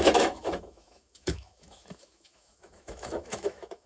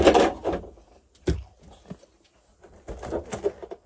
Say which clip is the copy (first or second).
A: first